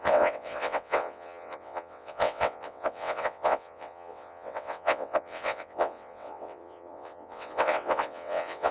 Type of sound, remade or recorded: remade